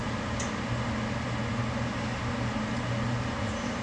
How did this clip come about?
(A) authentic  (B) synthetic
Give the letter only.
A